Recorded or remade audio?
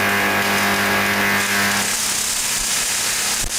recorded